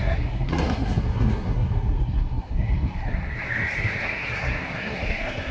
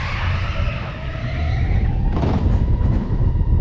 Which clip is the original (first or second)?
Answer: second